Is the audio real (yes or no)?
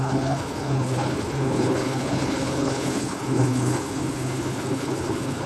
no